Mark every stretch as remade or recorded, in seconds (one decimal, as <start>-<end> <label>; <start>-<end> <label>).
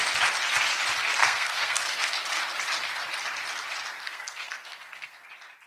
0.0-1.2 recorded; 1.2-2.4 remade; 2.4-4.0 recorded; 4.0-5.3 remade; 5.3-5.7 recorded